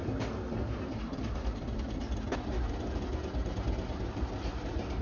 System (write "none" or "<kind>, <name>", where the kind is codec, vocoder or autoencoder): none